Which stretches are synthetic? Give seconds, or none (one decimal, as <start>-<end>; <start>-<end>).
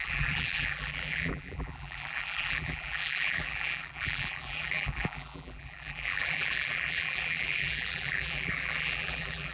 0.0-9.5